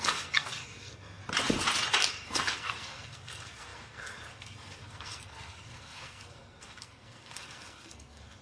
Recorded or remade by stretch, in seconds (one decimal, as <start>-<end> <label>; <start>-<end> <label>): 0.0-1.2 remade; 1.2-2.1 recorded; 2.1-8.4 remade